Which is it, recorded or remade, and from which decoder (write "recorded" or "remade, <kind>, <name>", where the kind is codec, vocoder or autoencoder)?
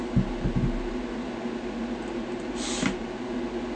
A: recorded